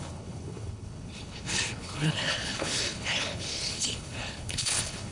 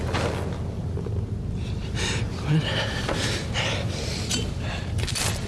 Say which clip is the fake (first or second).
first